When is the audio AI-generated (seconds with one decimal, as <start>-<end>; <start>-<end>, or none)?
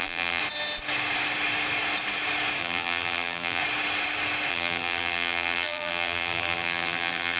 0.0-0.4; 2.6-3.6; 4.5-7.4